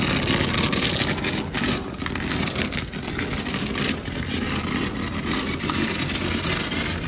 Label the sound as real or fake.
real